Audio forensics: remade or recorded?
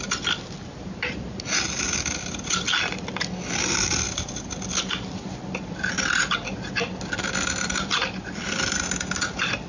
recorded